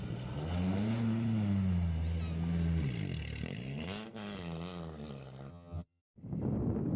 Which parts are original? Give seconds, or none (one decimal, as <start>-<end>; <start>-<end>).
0.0-5.5; 6.0-7.0